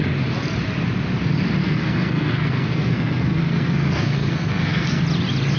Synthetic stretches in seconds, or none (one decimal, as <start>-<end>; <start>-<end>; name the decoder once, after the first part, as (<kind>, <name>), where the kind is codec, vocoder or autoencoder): 1.6-5.0 (codec, SNAC)